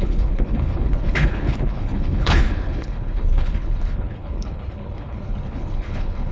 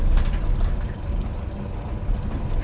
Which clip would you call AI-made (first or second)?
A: first